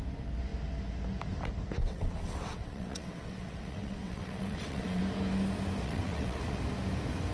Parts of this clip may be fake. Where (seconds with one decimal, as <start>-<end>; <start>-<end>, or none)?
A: 1.8-5.0; 5.8-6.6